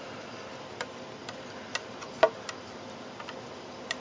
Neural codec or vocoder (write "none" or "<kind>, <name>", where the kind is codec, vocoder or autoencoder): none